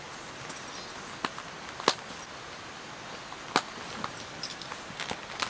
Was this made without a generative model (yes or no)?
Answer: yes